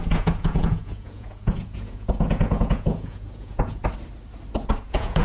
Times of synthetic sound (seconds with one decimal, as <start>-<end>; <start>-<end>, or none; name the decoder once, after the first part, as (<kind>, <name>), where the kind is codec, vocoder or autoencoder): 0.0-3.8 (vocoder, Vocos); 4.8-5.2